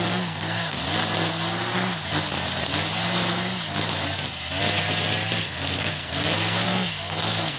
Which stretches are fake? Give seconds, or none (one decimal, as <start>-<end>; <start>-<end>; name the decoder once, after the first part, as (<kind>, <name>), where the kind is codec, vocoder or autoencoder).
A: 0.0-0.8 (codec, SNAC); 5.4-7.6